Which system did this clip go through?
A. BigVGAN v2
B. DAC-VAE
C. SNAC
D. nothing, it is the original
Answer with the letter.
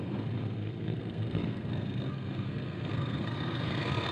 C